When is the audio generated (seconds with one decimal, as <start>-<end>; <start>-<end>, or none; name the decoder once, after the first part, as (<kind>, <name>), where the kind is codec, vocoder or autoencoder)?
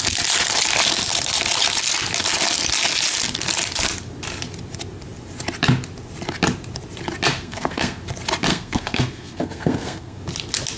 7.3-8.0 (codec, SNAC); 8.5-10.2